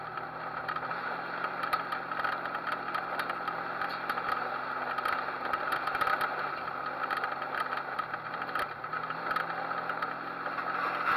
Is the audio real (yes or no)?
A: yes